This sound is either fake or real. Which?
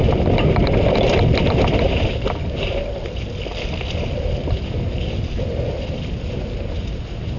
real